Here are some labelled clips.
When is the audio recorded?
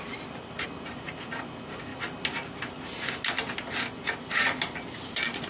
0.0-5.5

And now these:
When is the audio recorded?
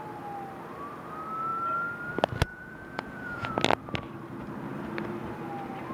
0.0-2.5; 3.5-5.9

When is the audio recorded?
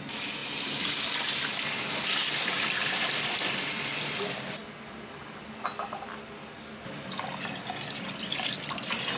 0.0-9.2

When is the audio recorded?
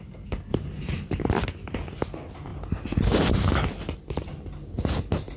0.0-0.5; 1.3-5.4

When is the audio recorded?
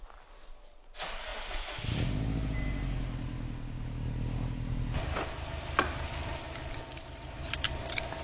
0.0-8.2